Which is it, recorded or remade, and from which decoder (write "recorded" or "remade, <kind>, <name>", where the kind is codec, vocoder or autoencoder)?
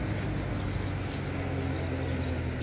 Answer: recorded